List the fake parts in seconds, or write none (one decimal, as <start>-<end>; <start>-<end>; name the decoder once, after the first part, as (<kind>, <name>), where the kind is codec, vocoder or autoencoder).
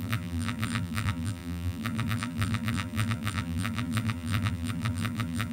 0.0-5.5 (vocoder, BigVGAN v2)